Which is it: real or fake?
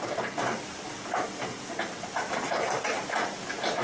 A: real